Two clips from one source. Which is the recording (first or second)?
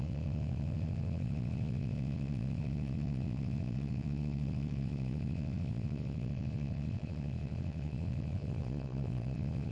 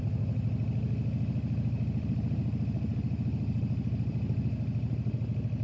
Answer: second